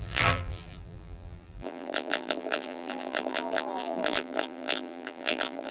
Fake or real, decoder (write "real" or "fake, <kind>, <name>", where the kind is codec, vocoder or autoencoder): fake, vocoder, BigVGAN v2